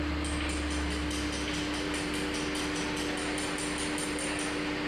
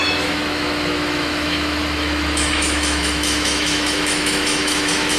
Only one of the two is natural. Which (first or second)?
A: first